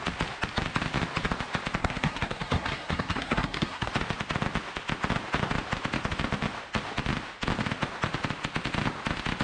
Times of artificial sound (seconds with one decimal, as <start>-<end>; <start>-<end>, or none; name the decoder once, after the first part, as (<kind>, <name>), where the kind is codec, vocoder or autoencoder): 1.8-3.9 (codec, SNAC)